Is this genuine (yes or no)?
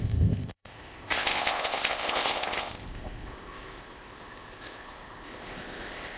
no